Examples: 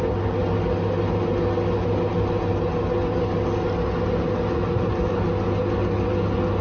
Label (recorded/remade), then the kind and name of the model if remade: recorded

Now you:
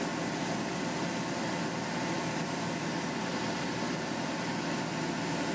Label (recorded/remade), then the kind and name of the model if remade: recorded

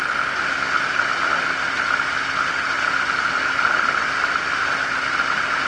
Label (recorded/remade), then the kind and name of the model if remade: recorded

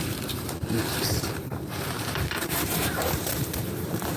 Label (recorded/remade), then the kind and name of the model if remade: remade, vocoder, BigVGAN v2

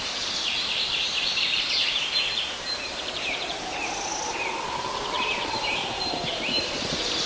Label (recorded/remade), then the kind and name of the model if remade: remade, vocoder, BigVGAN v2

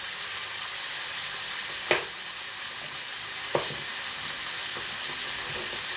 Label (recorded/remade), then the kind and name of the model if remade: recorded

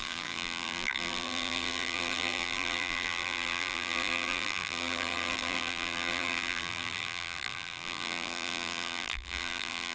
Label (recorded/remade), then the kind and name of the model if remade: remade, vocoder, BigVGAN v2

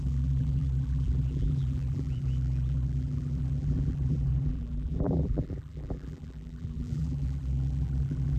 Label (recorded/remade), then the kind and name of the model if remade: remade, vocoder, BigVGAN v2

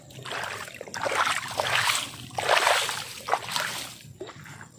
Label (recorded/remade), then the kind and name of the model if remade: recorded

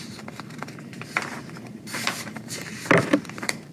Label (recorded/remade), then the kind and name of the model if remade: remade, vocoder, BigVGAN v2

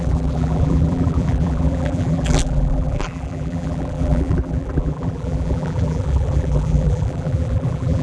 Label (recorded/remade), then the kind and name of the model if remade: remade, vocoder, BigVGAN v2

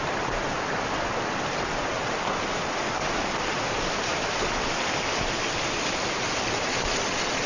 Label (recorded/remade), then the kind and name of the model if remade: recorded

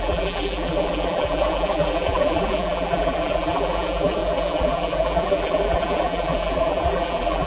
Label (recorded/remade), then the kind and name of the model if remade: remade, vocoder, BigVGAN v2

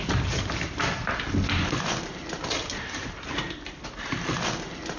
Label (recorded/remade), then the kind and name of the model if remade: remade, vocoder, BigVGAN v2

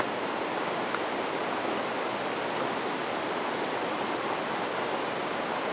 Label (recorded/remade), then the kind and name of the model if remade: recorded